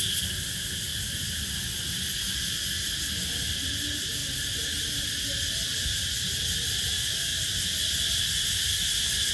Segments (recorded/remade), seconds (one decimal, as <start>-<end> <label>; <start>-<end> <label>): 0.0-9.3 recorded